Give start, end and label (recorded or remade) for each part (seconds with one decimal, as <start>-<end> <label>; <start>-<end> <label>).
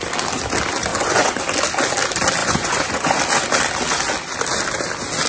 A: 0.0-0.9 recorded; 0.9-1.4 remade; 1.4-2.4 recorded; 2.4-3.2 remade; 3.2-5.3 recorded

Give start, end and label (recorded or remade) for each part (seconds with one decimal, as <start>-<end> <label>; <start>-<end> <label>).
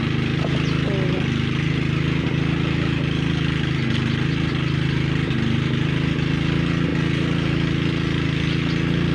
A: 0.0-9.1 recorded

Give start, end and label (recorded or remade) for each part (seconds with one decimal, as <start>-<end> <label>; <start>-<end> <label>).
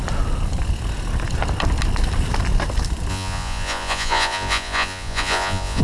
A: 0.0-3.1 recorded; 3.1-5.8 remade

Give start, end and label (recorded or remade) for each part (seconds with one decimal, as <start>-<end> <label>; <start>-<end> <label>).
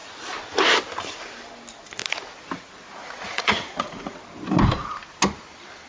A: 0.0-3.0 recorded; 3.0-4.2 remade; 4.2-5.9 recorded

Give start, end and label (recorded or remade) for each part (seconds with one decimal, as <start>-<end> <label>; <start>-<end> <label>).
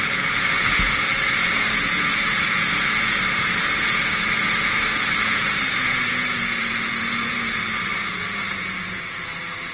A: 0.0-9.7 remade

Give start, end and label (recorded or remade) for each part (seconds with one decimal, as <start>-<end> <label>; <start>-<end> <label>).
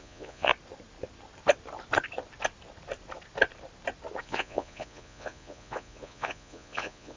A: 0.0-0.5 remade; 0.5-4.2 recorded; 4.2-7.2 remade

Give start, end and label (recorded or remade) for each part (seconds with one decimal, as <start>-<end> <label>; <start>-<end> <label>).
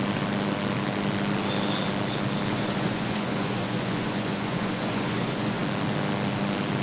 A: 0.0-2.5 recorded; 2.5-5.6 remade; 5.6-6.8 recorded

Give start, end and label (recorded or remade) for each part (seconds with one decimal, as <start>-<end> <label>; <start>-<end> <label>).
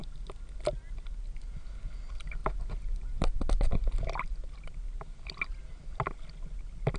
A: 0.0-7.0 recorded